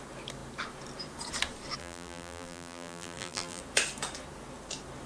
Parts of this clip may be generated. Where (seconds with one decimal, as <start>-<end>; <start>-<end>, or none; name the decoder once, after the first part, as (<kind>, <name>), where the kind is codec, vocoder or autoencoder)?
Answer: 1.8-3.6 (vocoder, BigVGAN v2)